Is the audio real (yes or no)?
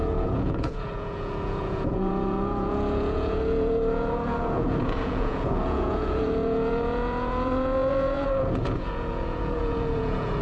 no